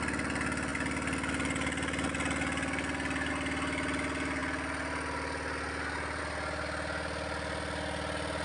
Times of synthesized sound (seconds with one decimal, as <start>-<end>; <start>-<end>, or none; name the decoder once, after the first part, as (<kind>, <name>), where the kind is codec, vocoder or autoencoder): none